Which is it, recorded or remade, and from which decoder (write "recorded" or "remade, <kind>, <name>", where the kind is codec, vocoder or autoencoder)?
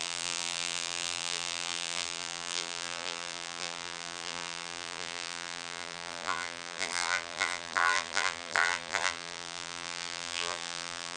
remade, vocoder, BigVGAN v2